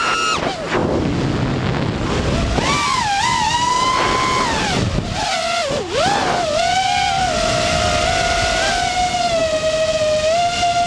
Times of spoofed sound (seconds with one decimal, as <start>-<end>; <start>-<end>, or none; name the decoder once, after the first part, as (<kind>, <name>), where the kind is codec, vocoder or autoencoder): none